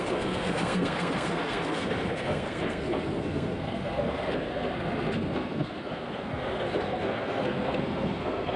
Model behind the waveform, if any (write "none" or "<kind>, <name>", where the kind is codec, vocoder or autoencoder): codec, SNAC